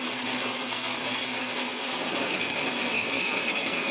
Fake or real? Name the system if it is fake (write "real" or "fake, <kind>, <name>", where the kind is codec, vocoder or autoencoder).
fake, codec, SNAC